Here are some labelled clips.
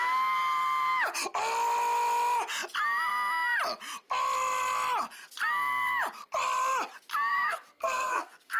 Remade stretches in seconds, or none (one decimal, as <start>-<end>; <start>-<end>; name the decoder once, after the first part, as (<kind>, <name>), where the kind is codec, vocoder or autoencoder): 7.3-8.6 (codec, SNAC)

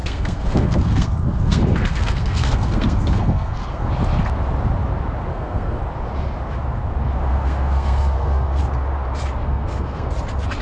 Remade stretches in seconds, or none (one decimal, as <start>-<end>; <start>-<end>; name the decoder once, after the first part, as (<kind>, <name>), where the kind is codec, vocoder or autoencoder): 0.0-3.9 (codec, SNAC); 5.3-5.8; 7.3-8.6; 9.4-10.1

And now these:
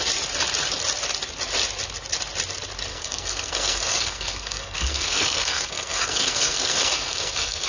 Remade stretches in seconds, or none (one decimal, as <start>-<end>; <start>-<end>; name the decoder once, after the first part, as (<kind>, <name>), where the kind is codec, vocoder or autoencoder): 2.9-7.7 (codec, SNAC)

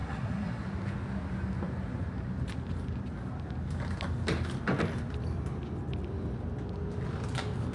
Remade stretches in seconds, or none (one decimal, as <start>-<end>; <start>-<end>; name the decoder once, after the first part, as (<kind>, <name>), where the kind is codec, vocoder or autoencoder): 0.0-0.6 (codec, SNAC)